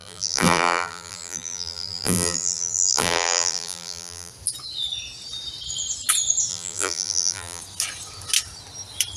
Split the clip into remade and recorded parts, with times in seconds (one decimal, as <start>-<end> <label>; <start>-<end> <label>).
0.0-4.3 remade; 4.3-6.5 recorded; 6.5-7.6 remade; 7.6-9.2 recorded